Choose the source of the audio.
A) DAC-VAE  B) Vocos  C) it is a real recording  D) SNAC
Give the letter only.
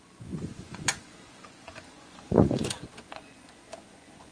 B